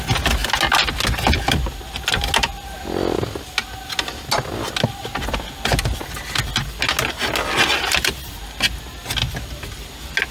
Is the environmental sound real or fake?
real